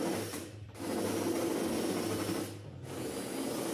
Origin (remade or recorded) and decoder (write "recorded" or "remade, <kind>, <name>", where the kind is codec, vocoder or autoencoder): recorded